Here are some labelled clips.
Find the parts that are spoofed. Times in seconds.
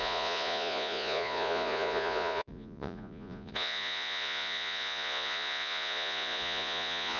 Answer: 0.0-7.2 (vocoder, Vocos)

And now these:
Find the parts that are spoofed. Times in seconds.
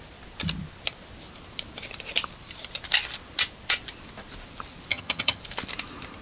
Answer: 4.9-5.4 (vocoder, HiFi-GAN)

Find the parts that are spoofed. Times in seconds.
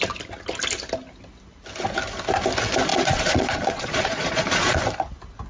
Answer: 2.9-4.8 (vocoder, Vocos)